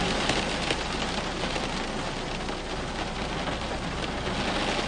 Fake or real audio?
real